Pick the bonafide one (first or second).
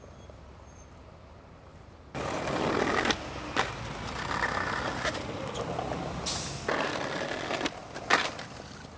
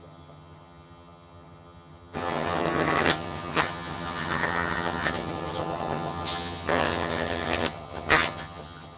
first